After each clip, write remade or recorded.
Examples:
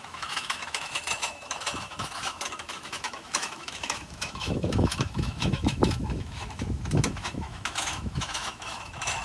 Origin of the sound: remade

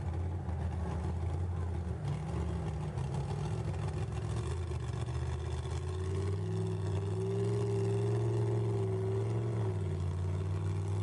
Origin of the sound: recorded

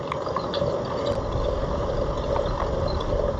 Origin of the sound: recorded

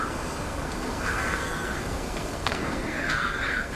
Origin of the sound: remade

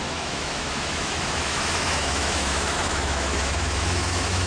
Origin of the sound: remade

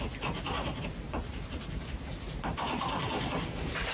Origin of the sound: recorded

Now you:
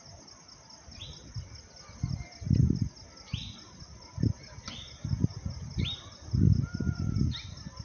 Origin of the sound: recorded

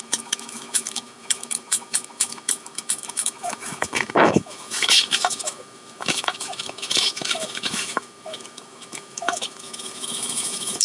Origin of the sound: remade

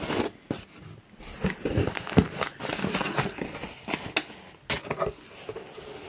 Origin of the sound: recorded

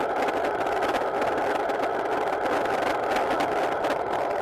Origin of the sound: recorded